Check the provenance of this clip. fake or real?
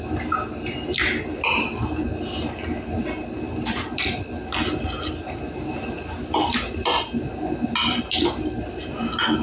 real